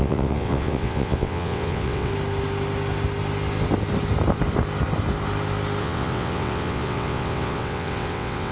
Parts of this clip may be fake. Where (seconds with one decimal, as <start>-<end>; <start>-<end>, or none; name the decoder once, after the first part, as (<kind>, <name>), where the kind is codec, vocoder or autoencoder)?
0.0-2.1 (vocoder, WaveNeXt); 5.8-8.5

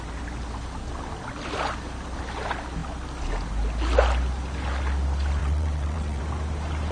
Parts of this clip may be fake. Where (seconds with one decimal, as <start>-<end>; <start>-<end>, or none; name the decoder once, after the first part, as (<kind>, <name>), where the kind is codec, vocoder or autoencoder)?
5.4-6.2 (vocoder, WaveNeXt)

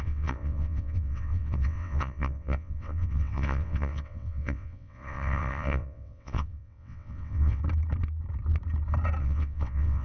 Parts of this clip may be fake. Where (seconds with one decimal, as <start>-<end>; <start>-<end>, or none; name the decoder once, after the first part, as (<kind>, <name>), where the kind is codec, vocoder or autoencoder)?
0.0-7.6 (vocoder, WaveNeXt); 9.2-10.0

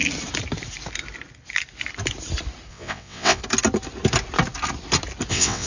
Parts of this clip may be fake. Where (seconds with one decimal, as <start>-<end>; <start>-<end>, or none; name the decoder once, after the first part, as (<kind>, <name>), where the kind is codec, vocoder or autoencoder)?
2.7-3.4 (vocoder, WaveNeXt); 5.3-5.7

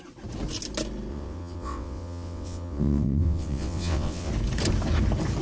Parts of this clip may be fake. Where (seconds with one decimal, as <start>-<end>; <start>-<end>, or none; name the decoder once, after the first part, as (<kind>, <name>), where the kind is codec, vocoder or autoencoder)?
1.1-4.3 (vocoder, WaveNeXt)

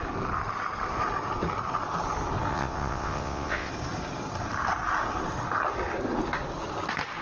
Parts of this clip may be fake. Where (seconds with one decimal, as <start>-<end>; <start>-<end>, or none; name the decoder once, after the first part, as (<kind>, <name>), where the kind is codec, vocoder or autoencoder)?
2.5-3.7 (vocoder, WaveNeXt)